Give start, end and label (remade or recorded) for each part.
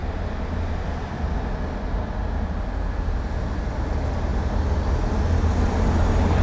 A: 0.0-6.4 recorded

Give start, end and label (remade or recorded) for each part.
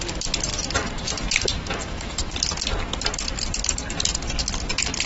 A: 0.0-0.5 recorded; 0.5-2.4 remade; 2.4-5.1 recorded